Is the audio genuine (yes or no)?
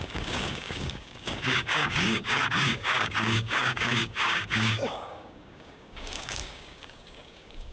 no